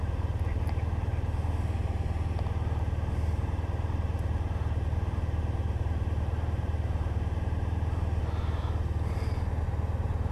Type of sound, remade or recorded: recorded